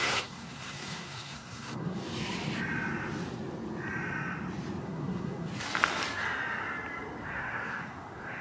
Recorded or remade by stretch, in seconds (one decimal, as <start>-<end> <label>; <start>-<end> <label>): 0.0-2.0 remade; 2.0-4.8 recorded; 4.8-5.5 remade; 5.5-7.3 recorded; 7.3-8.4 remade